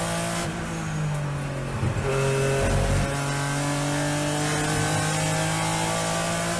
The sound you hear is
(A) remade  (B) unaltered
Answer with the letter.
B